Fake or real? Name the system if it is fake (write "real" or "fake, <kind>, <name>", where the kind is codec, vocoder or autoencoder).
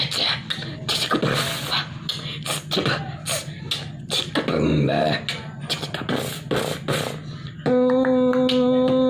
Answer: real